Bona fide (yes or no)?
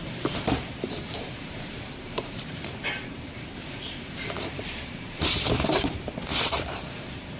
no